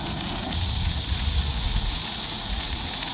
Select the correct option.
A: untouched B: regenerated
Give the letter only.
B